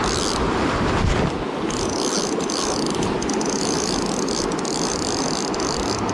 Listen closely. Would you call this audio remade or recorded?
recorded